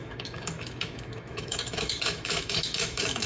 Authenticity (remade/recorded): remade